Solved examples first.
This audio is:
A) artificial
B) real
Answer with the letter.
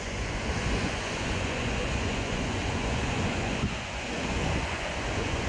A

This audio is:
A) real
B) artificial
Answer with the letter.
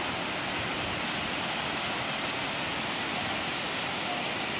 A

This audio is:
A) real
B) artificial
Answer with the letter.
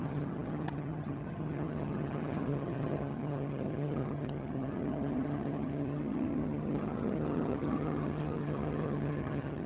B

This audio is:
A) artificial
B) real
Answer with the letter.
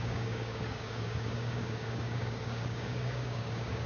A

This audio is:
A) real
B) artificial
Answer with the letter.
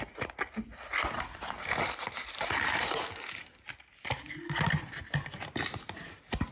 A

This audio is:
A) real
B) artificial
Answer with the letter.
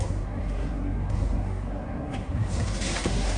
B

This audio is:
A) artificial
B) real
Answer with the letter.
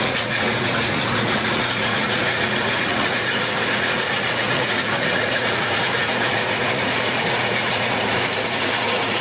A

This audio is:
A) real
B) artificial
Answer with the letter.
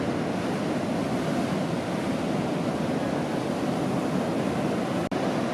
A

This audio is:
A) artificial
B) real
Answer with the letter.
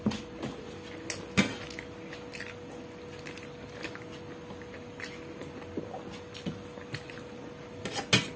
B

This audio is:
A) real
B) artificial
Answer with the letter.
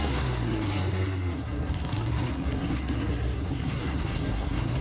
B